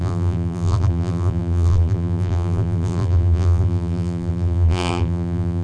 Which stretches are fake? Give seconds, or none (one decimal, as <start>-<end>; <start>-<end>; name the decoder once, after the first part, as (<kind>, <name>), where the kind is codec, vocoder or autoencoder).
0.0-5.6 (vocoder, BigVGAN v2)